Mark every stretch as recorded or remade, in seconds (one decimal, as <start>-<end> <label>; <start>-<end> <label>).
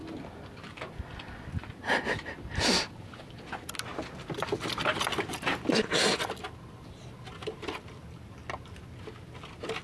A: 0.0-9.8 recorded